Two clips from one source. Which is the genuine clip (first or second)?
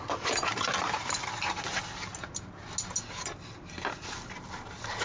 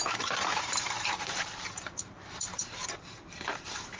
first